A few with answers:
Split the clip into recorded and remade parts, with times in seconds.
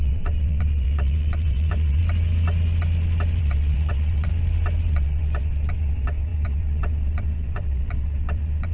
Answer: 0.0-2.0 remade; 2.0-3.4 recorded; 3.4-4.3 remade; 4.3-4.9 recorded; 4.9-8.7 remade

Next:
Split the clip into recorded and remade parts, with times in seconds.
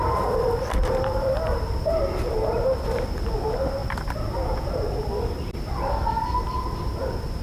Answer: 0.0-2.0 remade; 2.0-7.4 recorded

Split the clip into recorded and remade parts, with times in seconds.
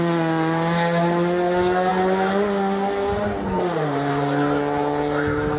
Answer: 0.0-5.6 recorded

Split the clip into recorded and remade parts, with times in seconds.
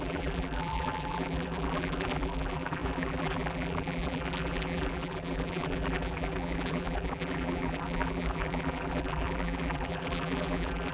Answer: 0.0-10.9 remade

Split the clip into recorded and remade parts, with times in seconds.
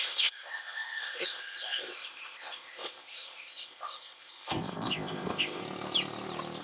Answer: 0.0-5.6 remade; 5.6-6.6 recorded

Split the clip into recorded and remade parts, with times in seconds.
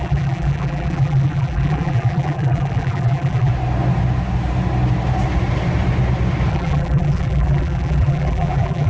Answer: 0.0-3.5 remade; 3.5-6.5 recorded; 6.5-8.9 remade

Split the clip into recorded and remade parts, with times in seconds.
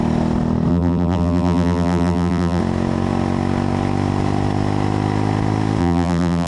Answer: 0.0-0.7 recorded; 0.7-2.6 remade; 2.6-5.8 recorded; 5.8-6.5 remade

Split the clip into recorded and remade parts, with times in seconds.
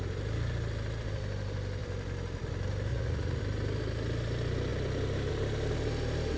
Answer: 0.0-2.9 recorded; 2.9-3.4 remade; 3.4-6.4 recorded